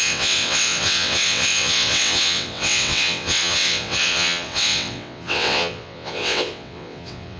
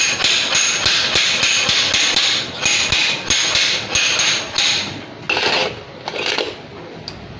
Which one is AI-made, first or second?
first